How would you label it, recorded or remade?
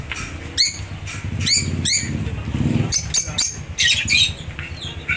recorded